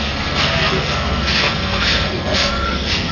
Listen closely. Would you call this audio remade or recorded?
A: remade